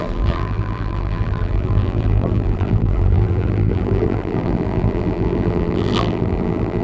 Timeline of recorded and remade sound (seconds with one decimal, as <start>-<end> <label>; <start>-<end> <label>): 0.0-6.8 remade